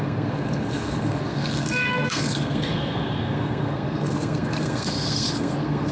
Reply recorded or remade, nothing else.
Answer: remade